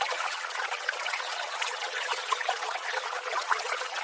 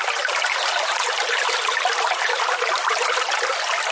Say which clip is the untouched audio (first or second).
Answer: second